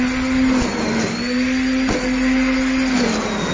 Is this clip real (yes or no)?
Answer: yes